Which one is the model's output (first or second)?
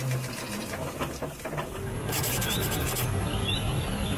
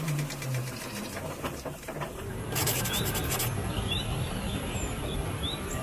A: second